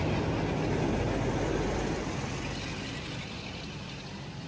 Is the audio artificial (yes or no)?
no